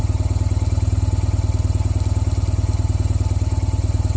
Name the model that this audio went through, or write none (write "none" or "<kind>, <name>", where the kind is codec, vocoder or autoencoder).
none